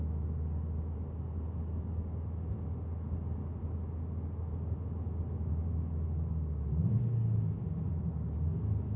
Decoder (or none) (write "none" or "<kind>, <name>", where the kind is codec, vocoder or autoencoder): none